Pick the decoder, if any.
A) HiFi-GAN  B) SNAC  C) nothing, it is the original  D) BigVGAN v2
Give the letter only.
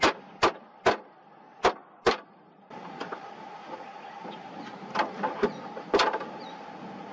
C